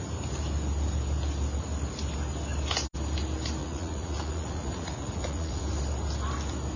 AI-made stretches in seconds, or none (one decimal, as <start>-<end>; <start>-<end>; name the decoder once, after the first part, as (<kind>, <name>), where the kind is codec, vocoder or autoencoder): 3.6-5.6 (vocoder, Vocos)